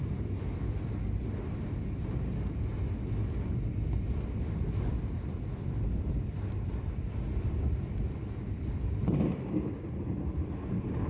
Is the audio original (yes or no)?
yes